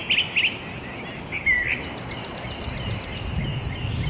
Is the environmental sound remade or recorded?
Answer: recorded